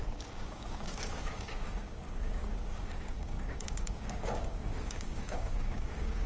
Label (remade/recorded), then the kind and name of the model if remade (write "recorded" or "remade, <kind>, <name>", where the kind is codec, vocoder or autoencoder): remade, codec, DAC